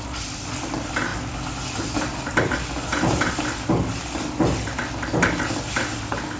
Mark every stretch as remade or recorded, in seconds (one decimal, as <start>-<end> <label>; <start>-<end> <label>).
0.0-6.4 recorded